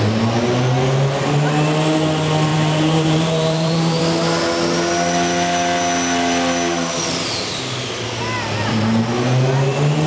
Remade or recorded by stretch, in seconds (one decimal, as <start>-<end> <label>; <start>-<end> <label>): 0.0-2.5 recorded; 2.5-4.0 remade; 4.0-10.1 recorded